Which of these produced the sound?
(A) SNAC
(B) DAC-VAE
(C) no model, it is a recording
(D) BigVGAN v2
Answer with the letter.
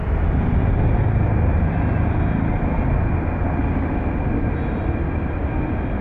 C